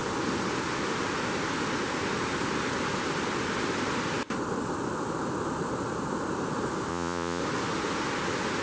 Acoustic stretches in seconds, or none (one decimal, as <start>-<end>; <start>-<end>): 0.0-6.9; 7.4-8.6